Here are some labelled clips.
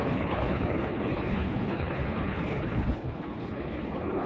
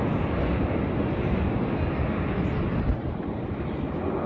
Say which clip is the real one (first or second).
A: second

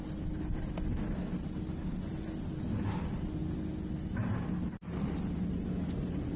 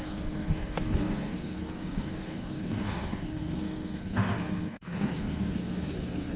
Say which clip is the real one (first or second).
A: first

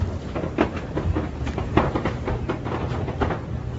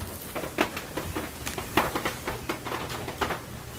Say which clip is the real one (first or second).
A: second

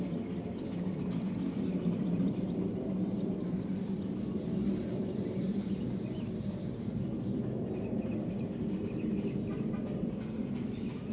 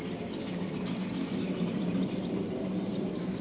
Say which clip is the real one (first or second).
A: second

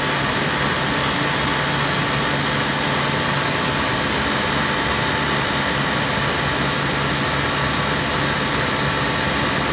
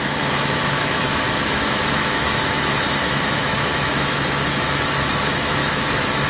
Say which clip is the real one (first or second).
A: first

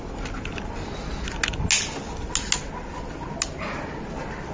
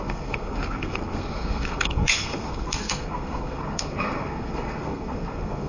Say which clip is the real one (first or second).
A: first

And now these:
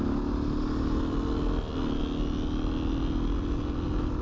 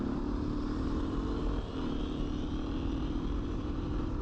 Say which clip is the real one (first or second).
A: first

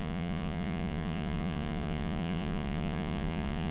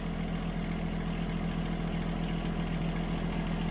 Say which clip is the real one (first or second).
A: second